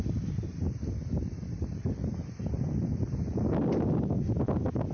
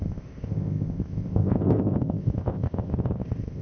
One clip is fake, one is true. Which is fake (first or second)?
second